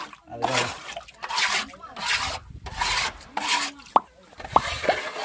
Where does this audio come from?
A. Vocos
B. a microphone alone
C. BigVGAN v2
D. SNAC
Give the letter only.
B